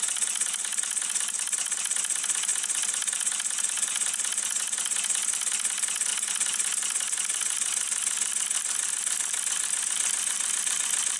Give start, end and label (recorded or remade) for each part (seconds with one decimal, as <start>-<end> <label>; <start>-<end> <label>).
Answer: 0.0-11.2 recorded